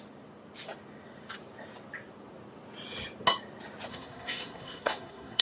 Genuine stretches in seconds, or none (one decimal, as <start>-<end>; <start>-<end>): 0.0-3.9